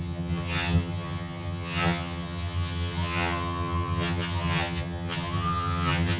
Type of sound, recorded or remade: remade